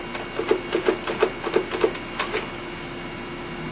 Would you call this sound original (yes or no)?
yes